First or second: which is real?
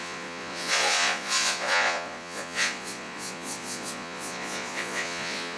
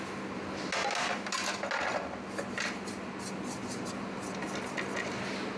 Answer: second